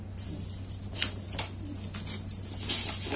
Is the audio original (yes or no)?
yes